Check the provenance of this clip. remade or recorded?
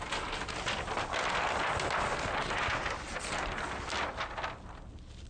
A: recorded